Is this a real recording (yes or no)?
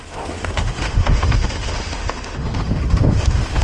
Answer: no